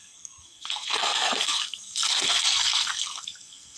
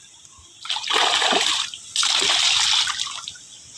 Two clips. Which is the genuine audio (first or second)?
second